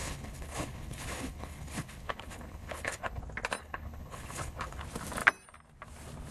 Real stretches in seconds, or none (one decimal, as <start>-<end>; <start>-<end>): 3.2-3.6; 4.8-6.3

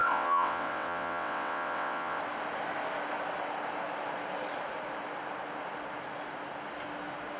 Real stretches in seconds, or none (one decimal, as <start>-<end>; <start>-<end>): 2.2-7.4

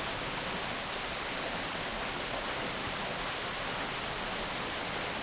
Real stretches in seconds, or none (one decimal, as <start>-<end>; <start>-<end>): 0.0-5.2